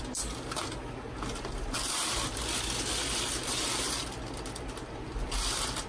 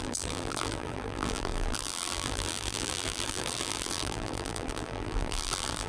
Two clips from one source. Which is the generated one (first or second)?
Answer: second